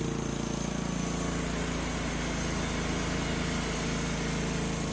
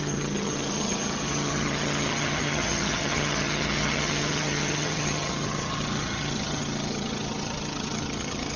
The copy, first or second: second